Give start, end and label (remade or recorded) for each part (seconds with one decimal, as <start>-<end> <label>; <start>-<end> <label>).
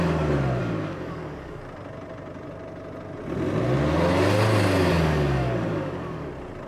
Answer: 0.0-0.6 recorded; 0.6-1.6 remade; 1.6-4.9 recorded; 4.9-6.3 remade; 6.3-6.7 recorded